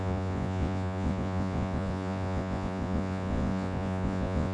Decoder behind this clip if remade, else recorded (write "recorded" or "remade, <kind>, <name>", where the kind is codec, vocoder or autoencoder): remade, vocoder, Vocos